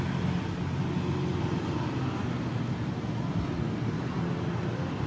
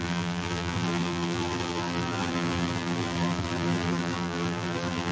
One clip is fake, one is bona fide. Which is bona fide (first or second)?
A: first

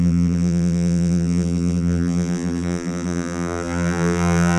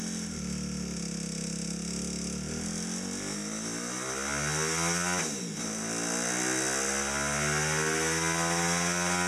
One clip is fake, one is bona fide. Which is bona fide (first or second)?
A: second